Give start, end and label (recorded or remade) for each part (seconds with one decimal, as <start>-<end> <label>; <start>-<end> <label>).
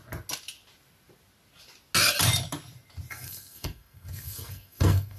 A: 0.0-3.1 recorded; 3.1-5.2 remade